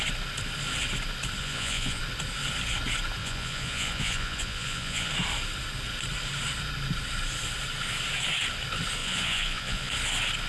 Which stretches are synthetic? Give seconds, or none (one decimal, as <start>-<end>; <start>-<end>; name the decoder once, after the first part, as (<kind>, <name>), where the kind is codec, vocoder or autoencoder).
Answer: 1.4-2.0 (vocoder, Vocos); 3.2-5.1; 9.0-9.9